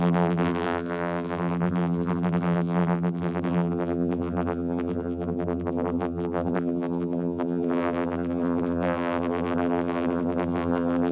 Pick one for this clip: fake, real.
fake